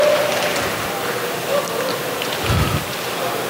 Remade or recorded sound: recorded